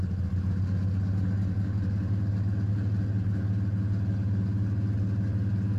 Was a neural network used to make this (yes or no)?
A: no